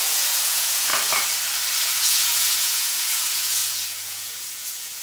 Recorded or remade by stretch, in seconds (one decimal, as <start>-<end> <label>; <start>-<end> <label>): 0.0-0.9 remade; 0.9-1.8 recorded; 1.8-5.0 remade